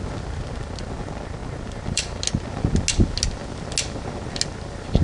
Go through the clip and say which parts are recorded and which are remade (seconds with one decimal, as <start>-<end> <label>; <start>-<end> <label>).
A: 0.0-1.4 recorded; 1.4-2.2 remade; 2.2-5.0 recorded